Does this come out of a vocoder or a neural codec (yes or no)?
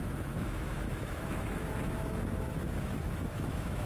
yes